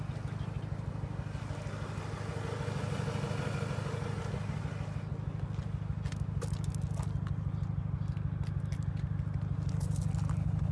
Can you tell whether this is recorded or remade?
recorded